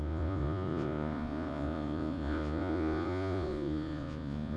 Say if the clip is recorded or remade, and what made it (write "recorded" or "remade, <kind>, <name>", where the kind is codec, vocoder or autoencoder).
remade, vocoder, Vocos